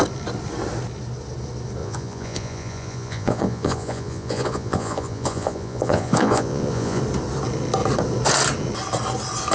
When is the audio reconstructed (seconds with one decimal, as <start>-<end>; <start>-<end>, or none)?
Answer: 1.8-7.0